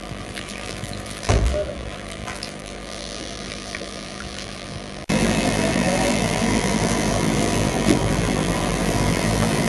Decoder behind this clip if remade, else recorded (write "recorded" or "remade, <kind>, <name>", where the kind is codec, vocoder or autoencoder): remade, vocoder, BigVGAN v2